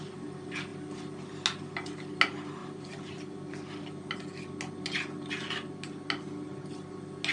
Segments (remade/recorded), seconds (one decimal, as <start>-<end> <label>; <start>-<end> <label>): 0.0-2.6 recorded; 2.6-3.8 remade; 3.8-7.3 recorded